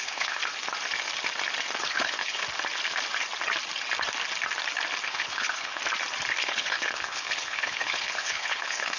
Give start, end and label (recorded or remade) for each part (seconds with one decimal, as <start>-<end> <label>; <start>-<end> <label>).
0.0-0.4 remade; 0.4-1.8 recorded; 1.8-2.4 remade; 2.4-5.0 recorded; 5.0-5.8 remade; 5.8-6.4 recorded; 6.4-9.0 remade